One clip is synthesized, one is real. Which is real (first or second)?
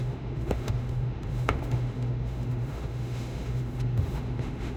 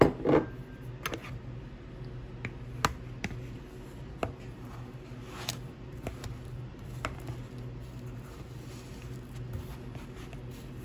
second